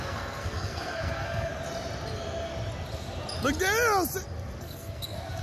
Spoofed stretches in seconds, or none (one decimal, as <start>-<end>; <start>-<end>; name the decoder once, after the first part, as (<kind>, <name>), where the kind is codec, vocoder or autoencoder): 0.0-1.5 (codec, SNAC); 4.6-5.4